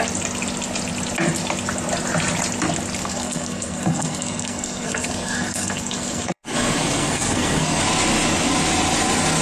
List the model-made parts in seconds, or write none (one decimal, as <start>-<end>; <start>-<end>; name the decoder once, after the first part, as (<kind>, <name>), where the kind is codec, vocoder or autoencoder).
3.0-7.8 (codec, SNAC)